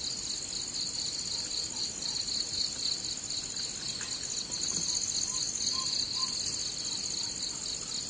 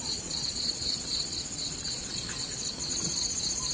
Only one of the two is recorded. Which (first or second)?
first